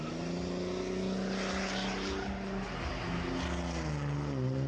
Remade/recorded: recorded